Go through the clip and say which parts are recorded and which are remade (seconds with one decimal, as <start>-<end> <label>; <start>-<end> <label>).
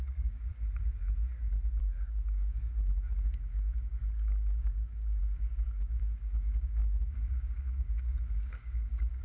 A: 0.0-0.5 remade; 0.5-1.8 recorded; 1.8-9.2 remade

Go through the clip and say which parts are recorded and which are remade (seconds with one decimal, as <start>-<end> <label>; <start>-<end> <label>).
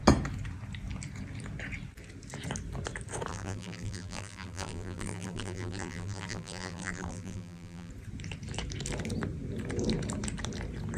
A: 0.0-3.3 recorded; 3.3-7.9 remade; 7.9-11.0 recorded